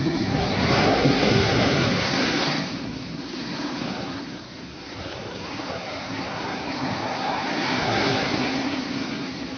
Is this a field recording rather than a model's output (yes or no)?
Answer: no